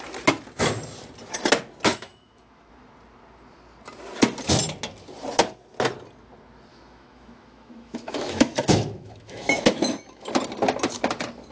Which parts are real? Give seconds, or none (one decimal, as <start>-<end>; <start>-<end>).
0.0-1.9; 2.7-6.7; 10.3-11.5